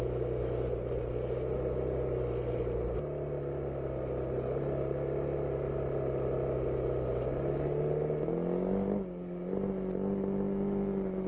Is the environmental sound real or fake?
real